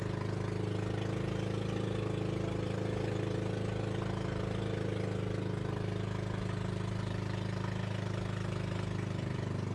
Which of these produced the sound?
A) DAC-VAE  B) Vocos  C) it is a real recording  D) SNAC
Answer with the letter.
C